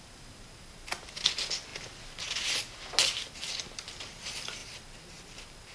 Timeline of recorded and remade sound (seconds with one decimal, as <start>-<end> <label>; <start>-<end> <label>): 0.0-5.7 recorded

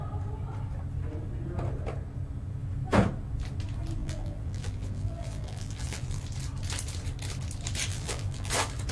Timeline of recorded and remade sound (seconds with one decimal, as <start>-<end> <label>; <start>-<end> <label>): 0.0-4.0 recorded; 4.0-6.2 remade; 6.2-7.9 recorded; 7.9-8.5 remade; 8.5-8.9 recorded

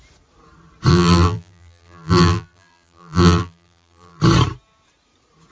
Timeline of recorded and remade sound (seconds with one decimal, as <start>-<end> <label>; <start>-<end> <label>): 0.0-0.9 recorded; 0.9-4.2 remade; 4.2-5.5 recorded

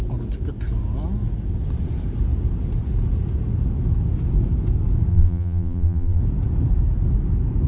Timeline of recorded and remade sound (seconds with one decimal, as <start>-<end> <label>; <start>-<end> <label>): 0.0-5.1 recorded; 5.1-6.2 remade; 6.2-7.7 recorded

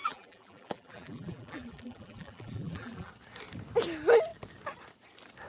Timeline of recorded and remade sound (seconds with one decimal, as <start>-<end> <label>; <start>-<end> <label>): 0.0-3.1 remade; 3.1-5.5 recorded

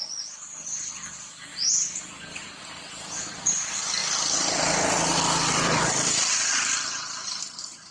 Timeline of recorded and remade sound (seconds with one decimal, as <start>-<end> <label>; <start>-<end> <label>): 0.0-1.5 remade; 1.5-2.6 recorded; 2.6-7.9 remade